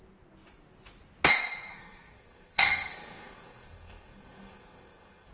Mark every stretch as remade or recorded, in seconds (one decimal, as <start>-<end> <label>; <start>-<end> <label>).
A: 0.0-1.7 recorded; 1.7-5.3 remade